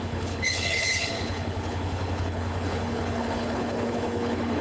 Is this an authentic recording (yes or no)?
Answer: no